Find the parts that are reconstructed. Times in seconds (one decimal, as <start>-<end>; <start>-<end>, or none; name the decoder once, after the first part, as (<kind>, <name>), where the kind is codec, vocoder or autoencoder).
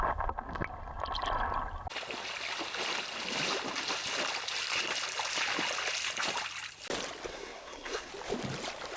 7.3-8.1 (codec, SNAC)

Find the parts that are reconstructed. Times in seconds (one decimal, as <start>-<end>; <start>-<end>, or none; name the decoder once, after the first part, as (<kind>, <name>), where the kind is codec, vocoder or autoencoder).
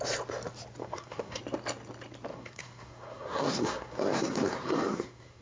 0.8-1.4 (codec, SNAC); 2.3-5.4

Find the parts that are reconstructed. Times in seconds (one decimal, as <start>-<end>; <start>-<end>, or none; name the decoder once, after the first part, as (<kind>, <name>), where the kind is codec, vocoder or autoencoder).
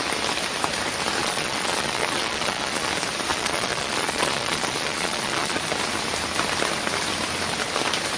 1.2-2.9 (vocoder, Vocos); 3.3-5.6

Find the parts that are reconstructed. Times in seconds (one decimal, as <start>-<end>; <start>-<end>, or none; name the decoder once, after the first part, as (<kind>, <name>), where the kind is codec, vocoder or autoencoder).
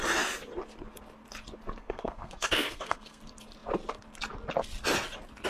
1.8-3.2 (codec, SNAC)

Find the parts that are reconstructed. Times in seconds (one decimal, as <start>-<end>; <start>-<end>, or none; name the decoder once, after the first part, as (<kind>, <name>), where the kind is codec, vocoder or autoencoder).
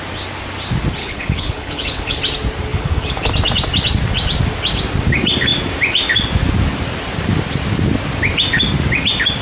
1.0-2.2 (codec, HILCodec); 2.7-3.3